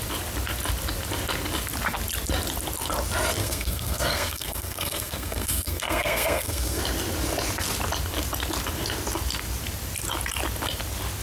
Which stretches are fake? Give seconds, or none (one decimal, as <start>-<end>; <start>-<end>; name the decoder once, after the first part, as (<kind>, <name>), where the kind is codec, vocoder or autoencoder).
3.4-6.8 (codec, SNAC)